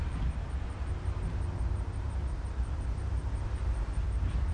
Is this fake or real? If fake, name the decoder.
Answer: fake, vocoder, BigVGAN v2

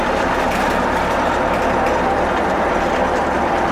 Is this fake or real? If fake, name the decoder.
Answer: fake, vocoder, BigVGAN v2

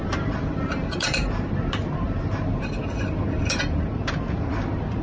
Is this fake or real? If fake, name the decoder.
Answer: fake, vocoder, BigVGAN v2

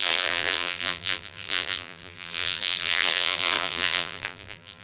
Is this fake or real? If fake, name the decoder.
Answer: fake, vocoder, BigVGAN v2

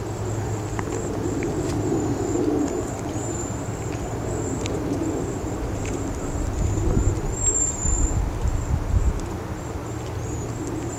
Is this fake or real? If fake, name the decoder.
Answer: fake, vocoder, BigVGAN v2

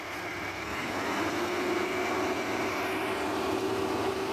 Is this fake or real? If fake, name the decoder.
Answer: real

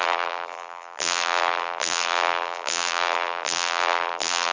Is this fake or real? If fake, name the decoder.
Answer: fake, vocoder, BigVGAN v2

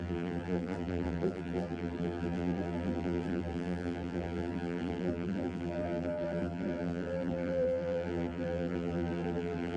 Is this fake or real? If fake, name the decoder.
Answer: fake, vocoder, BigVGAN v2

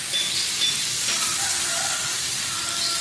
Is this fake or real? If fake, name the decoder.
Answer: real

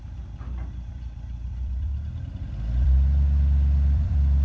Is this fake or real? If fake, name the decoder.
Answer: fake, vocoder, BigVGAN v2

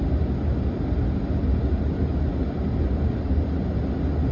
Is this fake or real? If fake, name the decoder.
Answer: real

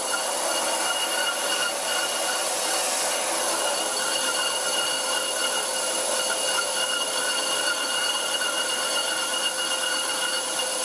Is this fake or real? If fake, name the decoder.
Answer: real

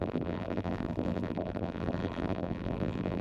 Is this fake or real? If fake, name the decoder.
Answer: fake, vocoder, BigVGAN v2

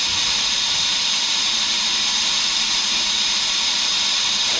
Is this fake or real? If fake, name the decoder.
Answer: fake, vocoder, BigVGAN v2